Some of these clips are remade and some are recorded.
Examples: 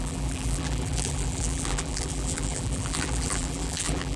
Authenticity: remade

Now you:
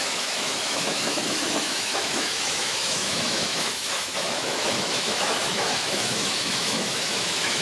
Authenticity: remade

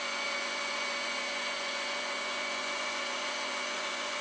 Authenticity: remade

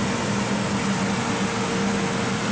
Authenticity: recorded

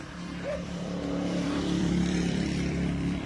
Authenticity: remade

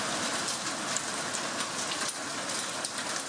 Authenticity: recorded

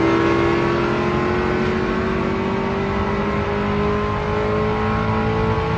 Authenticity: recorded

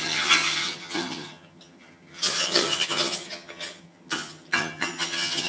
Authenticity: remade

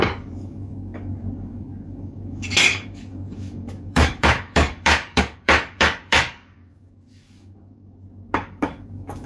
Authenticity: remade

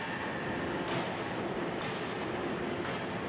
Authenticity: recorded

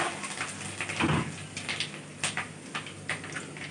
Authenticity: recorded